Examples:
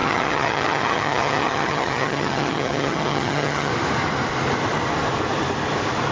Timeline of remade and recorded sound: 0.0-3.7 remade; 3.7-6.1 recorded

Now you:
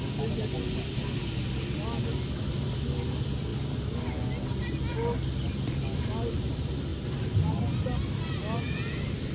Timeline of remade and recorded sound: 0.0-9.3 recorded

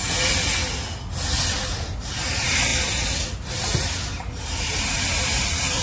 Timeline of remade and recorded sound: 0.0-1.5 recorded; 1.5-2.7 remade; 2.7-4.1 recorded; 4.1-5.8 remade